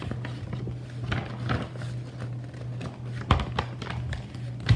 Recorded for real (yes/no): yes